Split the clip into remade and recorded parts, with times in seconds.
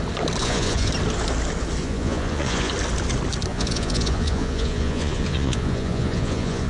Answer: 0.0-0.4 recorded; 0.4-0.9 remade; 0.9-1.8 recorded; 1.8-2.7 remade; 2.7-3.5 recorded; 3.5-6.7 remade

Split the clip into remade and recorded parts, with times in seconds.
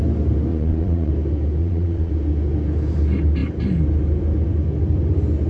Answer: 0.0-0.5 recorded; 0.5-1.1 remade; 1.1-1.6 recorded; 1.6-2.1 remade; 2.1-5.5 recorded